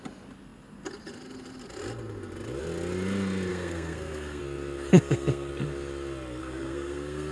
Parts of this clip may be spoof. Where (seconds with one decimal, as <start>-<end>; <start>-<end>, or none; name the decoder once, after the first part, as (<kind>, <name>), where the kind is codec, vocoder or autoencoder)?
3.5-4.4 (codec, SNAC); 4.9-5.5; 6.4-7.3

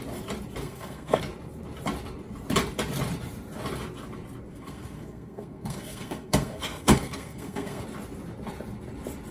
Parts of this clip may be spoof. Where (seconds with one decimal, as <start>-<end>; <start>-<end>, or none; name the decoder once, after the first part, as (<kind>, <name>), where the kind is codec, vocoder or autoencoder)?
0.6-1.2 (codec, SNAC); 4.5-7.8

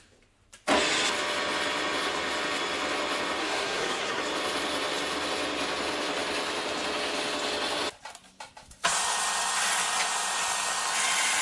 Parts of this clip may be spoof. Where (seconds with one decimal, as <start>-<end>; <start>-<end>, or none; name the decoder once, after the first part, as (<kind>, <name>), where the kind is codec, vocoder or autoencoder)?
3.4-4.2 (codec, SNAC)

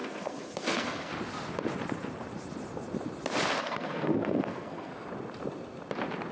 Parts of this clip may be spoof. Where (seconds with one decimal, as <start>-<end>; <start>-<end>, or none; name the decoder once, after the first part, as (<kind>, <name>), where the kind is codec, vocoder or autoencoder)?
0.0-1.1 (codec, SNAC); 3.6-4.9

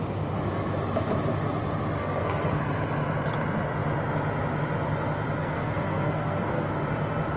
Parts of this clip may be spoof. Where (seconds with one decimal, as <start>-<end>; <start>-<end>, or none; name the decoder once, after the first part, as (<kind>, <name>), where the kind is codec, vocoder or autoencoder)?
2.0-2.6 (codec, SNAC); 5.4-6.7

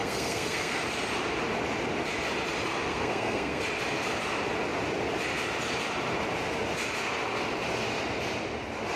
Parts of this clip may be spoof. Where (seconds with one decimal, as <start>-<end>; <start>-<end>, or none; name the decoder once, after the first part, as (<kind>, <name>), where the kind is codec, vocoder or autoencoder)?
0.0-0.8 (codec, SNAC); 2.9-3.6

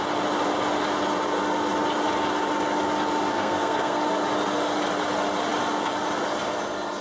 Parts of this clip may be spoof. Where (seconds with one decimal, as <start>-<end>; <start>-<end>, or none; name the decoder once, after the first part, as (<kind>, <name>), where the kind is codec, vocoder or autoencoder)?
3.3-4.0 (codec, SNAC)